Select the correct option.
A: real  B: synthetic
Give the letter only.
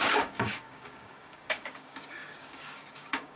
B